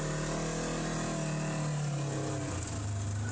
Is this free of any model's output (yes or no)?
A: yes